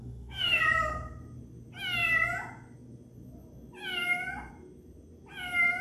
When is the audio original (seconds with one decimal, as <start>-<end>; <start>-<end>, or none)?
0.6-5.8